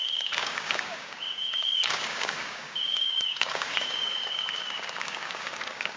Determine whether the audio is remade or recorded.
remade